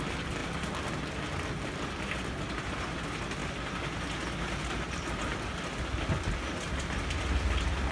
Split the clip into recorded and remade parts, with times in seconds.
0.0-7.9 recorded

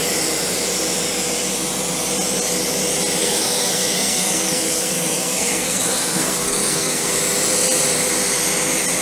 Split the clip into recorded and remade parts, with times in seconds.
0.0-3.2 recorded; 3.2-7.2 remade; 7.2-9.0 recorded

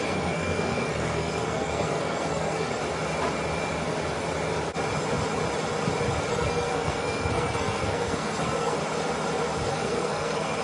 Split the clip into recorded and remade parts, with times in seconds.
0.0-2.8 remade; 2.8-6.3 recorded; 6.3-8.8 remade; 8.8-9.7 recorded; 9.7-10.6 remade